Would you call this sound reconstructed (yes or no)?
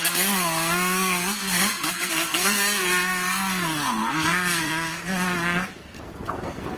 yes